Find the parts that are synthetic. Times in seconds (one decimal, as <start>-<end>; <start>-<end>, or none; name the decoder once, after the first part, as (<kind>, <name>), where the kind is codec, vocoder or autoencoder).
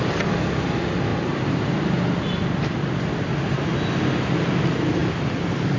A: 5.0-5.8 (vocoder, BigVGAN v2)